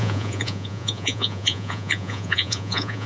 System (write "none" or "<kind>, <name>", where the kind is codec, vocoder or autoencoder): vocoder, Vocos